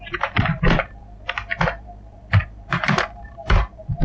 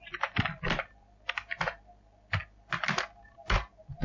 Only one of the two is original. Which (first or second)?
second